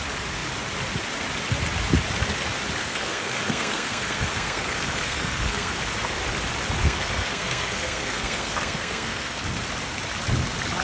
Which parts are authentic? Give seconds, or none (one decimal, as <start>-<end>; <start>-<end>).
0.0-2.8; 5.8-6.8; 9.4-10.8